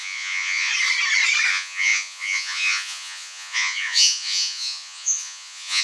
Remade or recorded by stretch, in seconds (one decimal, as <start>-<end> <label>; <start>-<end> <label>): 0.0-0.7 remade; 0.7-1.5 recorded; 1.5-5.8 remade